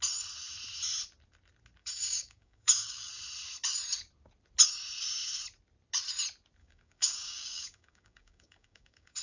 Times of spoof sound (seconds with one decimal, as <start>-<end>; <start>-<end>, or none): 1.8-3.1; 6.6-9.2